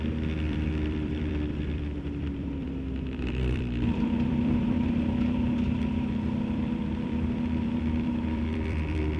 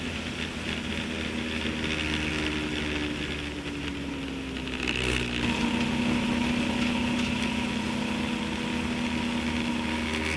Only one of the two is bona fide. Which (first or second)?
second